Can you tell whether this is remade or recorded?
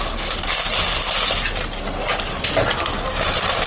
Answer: recorded